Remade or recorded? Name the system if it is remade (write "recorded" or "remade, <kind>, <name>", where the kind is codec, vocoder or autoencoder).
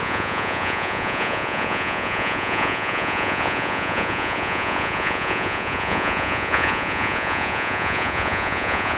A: remade, vocoder, Vocos